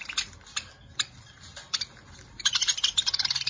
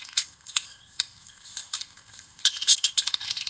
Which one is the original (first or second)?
first